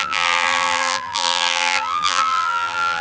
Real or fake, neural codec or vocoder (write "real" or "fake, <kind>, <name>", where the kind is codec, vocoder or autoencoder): fake, vocoder, BigVGAN v2